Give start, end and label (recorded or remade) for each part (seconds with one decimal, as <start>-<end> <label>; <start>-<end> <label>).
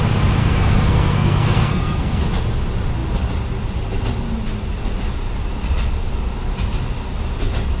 0.0-0.4 recorded; 0.4-2.2 remade; 2.2-7.8 recorded